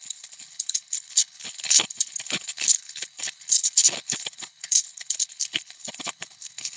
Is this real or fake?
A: fake